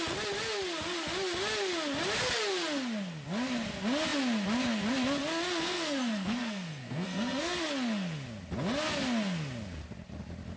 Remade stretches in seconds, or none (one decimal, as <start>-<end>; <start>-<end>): 5.6-7.6